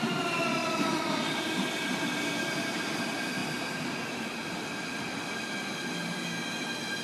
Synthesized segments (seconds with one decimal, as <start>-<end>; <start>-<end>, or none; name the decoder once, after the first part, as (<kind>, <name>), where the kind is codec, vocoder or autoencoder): 3.4-4.6 (vocoder, BigVGAN v2)